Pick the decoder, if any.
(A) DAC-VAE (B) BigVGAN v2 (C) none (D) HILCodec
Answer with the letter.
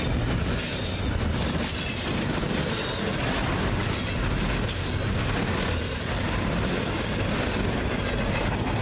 C